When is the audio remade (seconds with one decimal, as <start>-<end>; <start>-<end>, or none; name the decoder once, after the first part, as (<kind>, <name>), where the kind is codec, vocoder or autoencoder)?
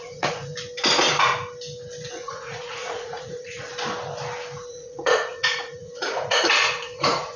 0.0-0.5 (vocoder, Vocos); 2.1-3.7; 4.7-7.4